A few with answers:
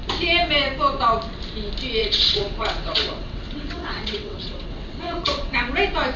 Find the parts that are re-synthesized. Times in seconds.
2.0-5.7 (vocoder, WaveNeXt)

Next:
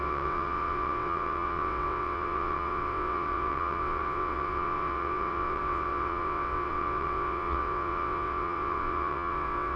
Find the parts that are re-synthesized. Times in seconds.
0.0-9.8 (vocoder, WaveNeXt)